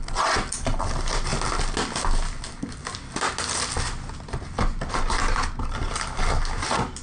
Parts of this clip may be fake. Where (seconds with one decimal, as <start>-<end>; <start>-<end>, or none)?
none